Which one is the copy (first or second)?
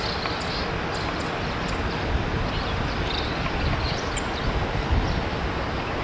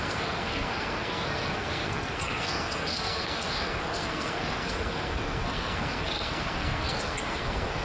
second